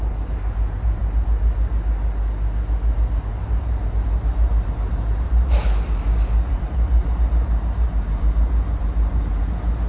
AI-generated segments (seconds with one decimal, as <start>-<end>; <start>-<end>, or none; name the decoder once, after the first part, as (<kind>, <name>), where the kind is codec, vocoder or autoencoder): 0.0-1.0 (vocoder, BigVGAN v2); 3.3-9.9